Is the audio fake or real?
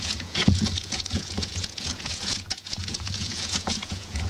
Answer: fake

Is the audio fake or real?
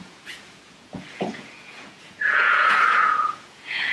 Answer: fake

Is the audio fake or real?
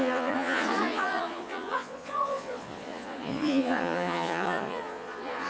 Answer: fake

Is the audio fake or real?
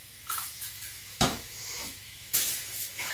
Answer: fake